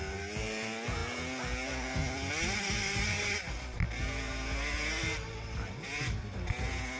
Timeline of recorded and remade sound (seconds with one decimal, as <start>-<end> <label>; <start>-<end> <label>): 0.0-7.0 recorded